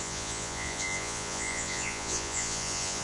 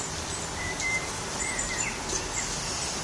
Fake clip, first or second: first